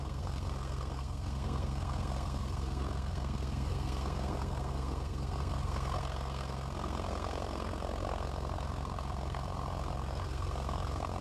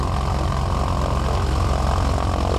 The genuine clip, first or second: second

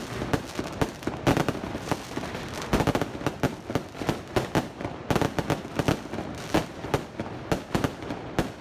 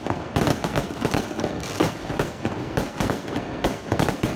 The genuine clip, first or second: first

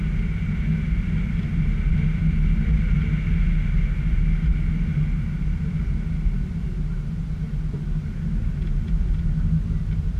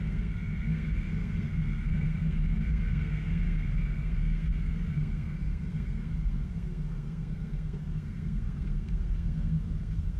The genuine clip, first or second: first